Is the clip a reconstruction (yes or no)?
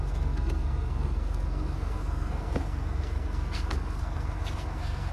yes